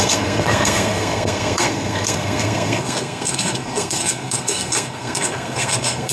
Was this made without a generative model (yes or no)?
no